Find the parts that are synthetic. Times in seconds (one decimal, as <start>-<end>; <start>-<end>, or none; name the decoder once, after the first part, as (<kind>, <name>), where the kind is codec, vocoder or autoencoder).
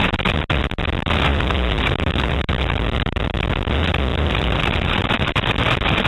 1.3-3.2 (vocoder, BigVGAN v2); 4.1-5.2